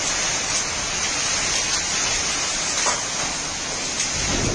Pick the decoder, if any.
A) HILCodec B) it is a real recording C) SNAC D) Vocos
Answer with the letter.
B